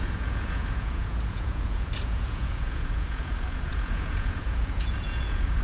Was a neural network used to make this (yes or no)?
yes